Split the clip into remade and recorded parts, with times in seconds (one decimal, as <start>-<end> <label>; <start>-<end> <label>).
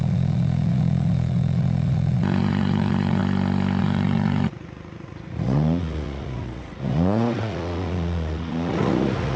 0.0-3.2 remade; 3.2-3.8 recorded; 3.8-9.4 remade